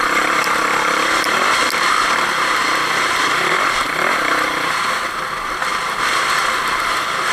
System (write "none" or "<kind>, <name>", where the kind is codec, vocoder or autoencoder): none